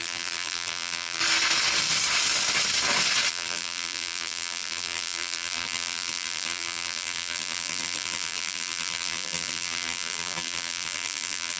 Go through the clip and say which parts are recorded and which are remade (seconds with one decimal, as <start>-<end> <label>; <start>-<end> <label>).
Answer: 0.0-1.2 remade; 1.2-3.3 recorded; 3.3-11.6 remade